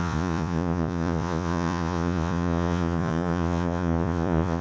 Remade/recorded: remade